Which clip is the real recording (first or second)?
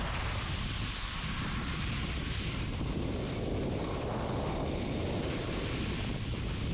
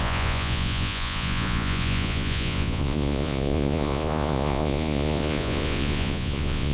first